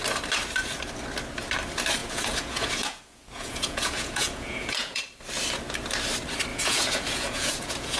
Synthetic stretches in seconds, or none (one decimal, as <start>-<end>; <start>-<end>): 2.0-5.0; 6.5-8.0